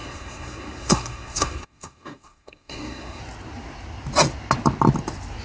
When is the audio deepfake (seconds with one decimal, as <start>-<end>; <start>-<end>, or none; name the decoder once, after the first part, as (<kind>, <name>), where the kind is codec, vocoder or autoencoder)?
0.0-3.2 (codec, SNAC)

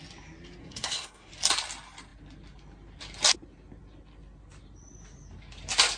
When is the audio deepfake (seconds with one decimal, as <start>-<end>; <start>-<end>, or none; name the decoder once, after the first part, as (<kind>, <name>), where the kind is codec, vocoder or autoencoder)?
0.6-1.3 (codec, SNAC)

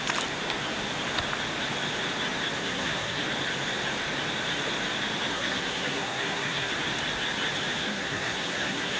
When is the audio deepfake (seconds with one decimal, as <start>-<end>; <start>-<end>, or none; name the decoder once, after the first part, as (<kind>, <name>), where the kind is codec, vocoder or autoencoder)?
2.6-3.2 (codec, SNAC); 5.3-6.7; 7.8-9.0

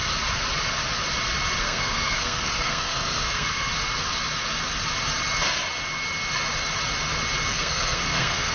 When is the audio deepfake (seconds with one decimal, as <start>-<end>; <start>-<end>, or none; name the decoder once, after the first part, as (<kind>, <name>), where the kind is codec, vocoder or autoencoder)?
1.6-3.7 (codec, SNAC); 7.5-8.5

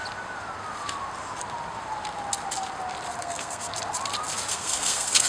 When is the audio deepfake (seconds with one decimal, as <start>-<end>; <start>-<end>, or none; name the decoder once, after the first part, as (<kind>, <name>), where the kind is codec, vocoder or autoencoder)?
3.2-3.7 (codec, SNAC); 4.5-5.3

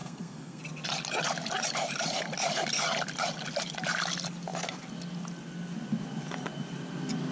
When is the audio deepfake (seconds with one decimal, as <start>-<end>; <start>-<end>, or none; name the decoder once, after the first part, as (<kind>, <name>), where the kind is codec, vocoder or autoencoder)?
0.0-0.6 (codec, SNAC)